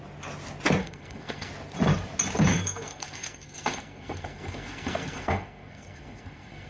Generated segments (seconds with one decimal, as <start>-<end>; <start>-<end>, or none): 0.8-1.5; 2.5-6.7